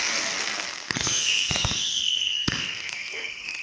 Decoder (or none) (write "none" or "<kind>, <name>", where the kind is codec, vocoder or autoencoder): codec, SNAC